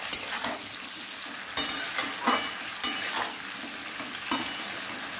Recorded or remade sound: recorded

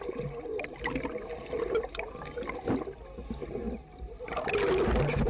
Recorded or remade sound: recorded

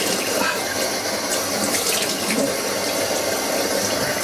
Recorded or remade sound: recorded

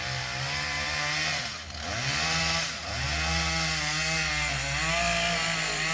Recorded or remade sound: recorded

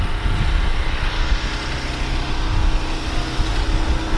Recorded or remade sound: recorded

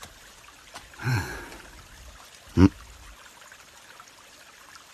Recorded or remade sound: recorded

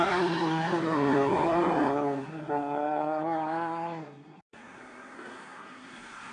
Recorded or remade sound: remade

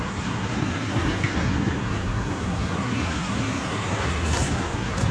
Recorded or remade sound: remade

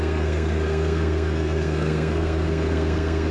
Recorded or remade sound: remade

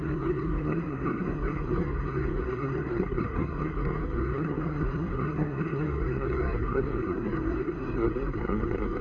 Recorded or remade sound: remade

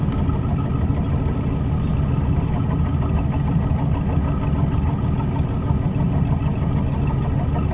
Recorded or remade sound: recorded